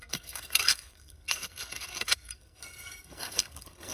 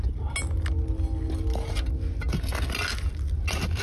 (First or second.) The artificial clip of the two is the first